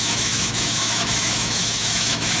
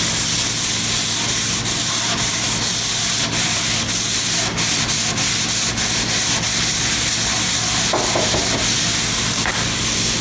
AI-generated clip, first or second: first